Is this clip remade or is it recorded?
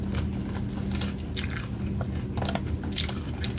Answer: recorded